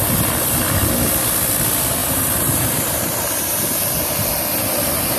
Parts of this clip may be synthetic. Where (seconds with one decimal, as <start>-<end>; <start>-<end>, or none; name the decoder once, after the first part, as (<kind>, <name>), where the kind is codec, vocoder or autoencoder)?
2.0-5.2 (vocoder, BigVGAN v2)